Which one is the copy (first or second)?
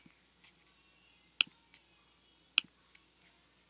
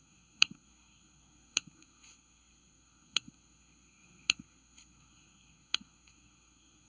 second